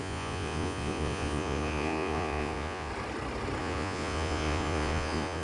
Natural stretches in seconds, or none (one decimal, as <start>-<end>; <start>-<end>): 2.9-3.6